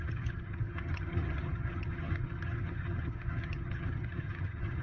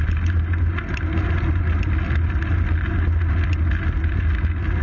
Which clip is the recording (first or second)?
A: second